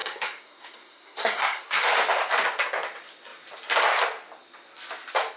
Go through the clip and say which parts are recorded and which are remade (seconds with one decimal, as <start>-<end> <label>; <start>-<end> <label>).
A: 0.0-1.8 remade; 1.8-5.4 recorded